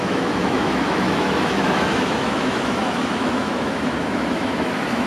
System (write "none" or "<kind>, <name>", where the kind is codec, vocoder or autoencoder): autoencoder, DAC-VAE